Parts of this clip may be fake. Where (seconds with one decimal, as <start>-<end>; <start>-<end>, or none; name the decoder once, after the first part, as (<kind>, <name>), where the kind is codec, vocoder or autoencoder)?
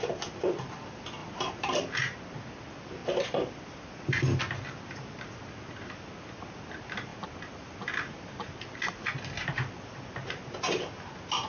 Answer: 1.2-1.8 (vocoder, BigVGAN v2); 7.1-9.1